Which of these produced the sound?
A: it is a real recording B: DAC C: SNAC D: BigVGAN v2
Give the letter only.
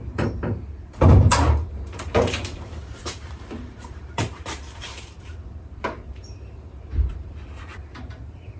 D